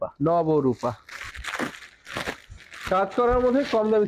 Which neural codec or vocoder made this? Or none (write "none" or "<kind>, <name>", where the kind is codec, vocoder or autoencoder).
none